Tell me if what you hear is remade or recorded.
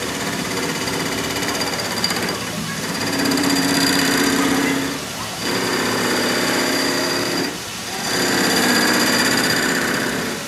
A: remade